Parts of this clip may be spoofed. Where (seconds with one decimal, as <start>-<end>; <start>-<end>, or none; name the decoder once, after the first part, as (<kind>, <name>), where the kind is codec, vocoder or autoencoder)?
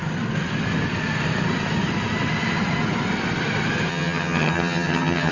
3.9-5.3 (vocoder, HiFi-GAN)